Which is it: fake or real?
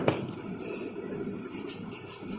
real